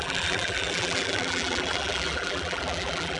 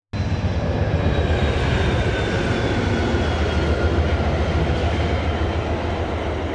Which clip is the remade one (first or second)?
first